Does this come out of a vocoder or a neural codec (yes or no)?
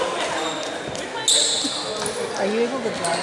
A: no